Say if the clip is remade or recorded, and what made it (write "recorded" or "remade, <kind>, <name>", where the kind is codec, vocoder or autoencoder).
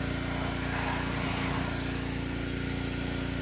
recorded